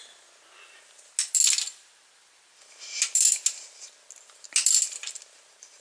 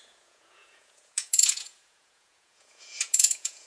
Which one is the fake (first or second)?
second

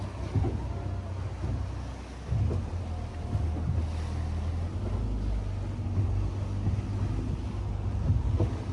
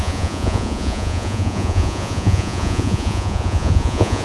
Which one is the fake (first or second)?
second